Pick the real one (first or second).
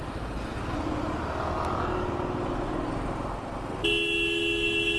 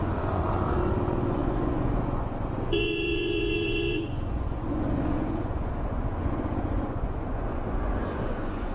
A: first